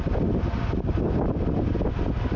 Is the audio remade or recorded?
recorded